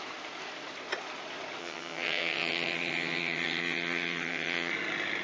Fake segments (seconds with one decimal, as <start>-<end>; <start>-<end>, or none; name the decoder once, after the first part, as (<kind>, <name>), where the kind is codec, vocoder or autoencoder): 1.6-4.7 (vocoder, HiFi-GAN)